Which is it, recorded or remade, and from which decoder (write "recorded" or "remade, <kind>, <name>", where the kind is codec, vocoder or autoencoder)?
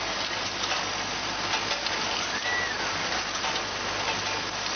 recorded